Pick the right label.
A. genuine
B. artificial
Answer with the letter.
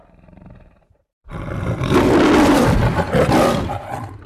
B